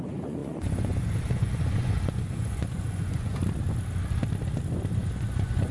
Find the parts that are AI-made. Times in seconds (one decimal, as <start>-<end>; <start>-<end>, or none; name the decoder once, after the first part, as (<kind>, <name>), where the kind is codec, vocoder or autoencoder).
0.0-3.4 (vocoder, Vocos); 5.0-5.7